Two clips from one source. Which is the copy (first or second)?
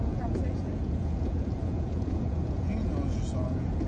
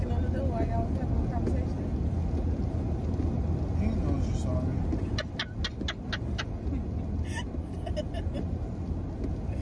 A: first